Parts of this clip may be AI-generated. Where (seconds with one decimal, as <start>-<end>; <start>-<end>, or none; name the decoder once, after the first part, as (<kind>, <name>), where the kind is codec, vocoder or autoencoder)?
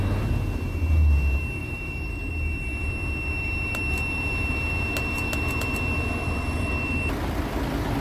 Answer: 1.6-2.3 (vocoder, BigVGAN v2)